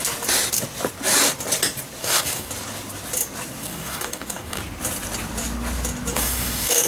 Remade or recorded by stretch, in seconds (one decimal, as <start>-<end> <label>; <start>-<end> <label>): 0.0-2.0 recorded; 2.0-2.5 remade; 2.5-3.6 recorded; 3.6-4.6 remade; 4.6-6.1 recorded; 6.1-6.9 remade